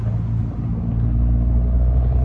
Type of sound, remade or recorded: recorded